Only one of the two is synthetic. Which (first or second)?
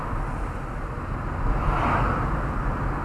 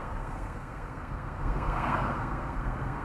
second